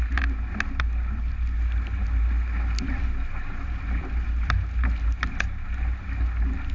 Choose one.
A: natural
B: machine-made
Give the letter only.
A